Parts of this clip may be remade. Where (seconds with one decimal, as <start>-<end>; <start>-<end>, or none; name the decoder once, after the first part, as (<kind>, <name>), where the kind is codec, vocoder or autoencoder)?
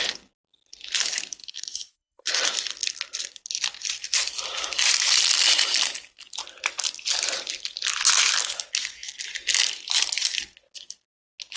1.4-2.3 (autoencoder, DAC-VAE)